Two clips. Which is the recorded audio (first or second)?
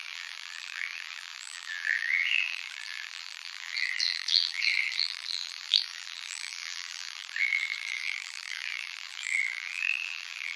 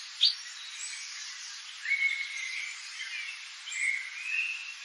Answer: second